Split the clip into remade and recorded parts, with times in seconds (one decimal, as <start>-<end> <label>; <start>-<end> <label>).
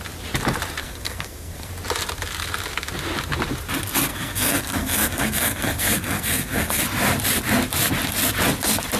0.0-0.8 recorded; 0.8-1.7 remade; 1.7-4.1 recorded; 4.1-6.8 remade; 6.8-9.0 recorded